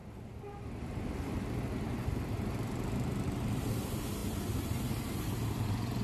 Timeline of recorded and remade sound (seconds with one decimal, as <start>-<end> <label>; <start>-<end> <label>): 0.0-0.8 recorded; 0.8-6.0 remade